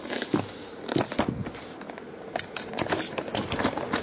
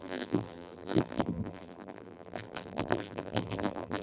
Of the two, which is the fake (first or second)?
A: second